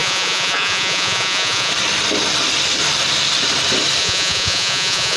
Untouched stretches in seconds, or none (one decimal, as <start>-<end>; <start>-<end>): 1.7-4.0